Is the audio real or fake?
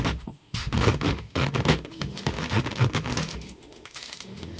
fake